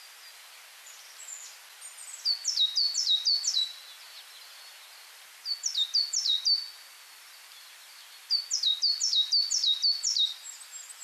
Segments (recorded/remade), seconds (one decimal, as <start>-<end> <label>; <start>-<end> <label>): 0.0-11.0 recorded